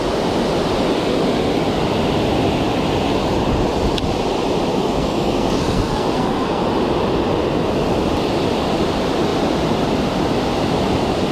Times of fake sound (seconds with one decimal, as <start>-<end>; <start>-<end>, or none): 4.7-6.6